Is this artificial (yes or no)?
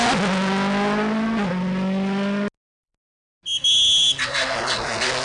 no